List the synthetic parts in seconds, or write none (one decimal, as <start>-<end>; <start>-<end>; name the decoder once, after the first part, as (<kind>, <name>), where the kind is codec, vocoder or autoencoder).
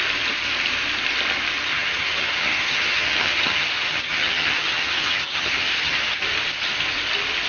1.7-6.2 (vocoder, HiFi-GAN)